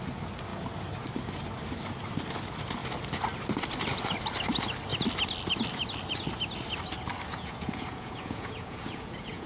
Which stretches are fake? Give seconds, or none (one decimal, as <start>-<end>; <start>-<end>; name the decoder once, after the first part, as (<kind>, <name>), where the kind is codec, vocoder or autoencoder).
7.3-9.5 (vocoder, Vocos)